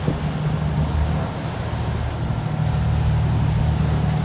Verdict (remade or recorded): recorded